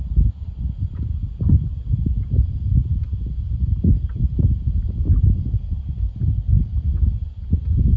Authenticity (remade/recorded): recorded